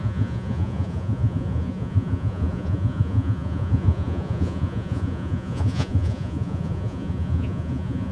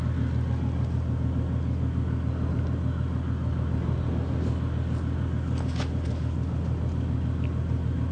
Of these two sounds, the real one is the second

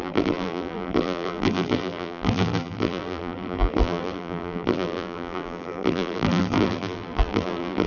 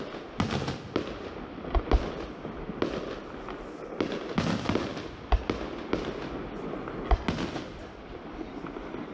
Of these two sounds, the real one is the second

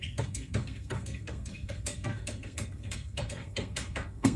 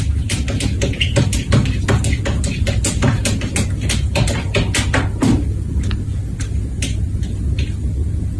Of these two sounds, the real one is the second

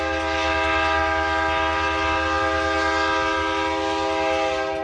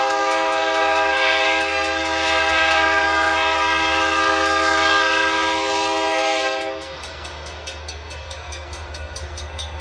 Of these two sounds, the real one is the first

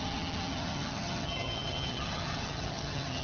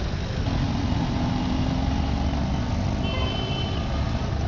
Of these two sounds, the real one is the second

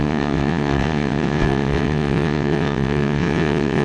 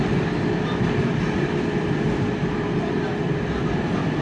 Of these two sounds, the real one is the second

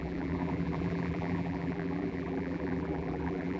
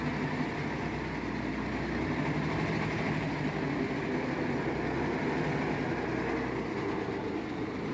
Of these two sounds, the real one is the second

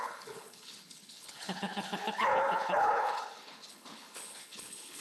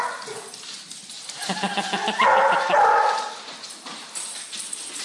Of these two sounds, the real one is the second